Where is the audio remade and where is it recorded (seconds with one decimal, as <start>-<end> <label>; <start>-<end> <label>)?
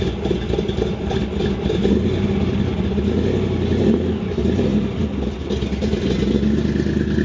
0.0-7.2 recorded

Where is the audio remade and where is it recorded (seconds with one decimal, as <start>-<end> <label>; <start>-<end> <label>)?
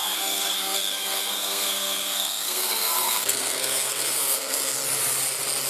0.0-4.8 remade; 4.8-5.7 recorded